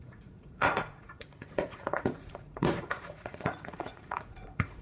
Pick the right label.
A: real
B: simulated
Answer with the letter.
B